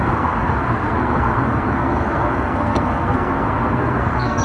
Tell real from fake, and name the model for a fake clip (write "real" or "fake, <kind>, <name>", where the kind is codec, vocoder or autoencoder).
fake, codec, SNAC